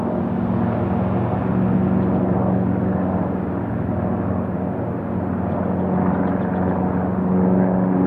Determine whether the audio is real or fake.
real